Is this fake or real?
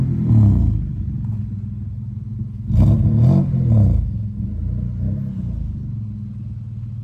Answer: real